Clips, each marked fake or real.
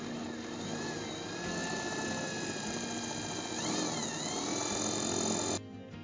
real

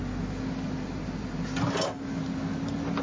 real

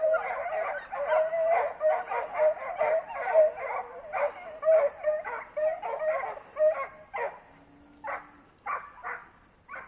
real